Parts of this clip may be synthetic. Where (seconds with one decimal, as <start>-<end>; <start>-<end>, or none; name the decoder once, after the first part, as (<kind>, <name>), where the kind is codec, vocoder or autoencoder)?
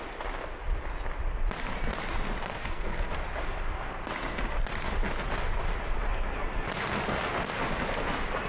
2.5-3.1 (codec, SNAC)